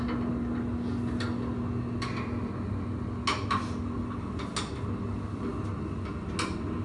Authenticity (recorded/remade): recorded